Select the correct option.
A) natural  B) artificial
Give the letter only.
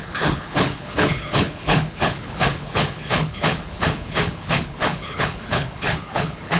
B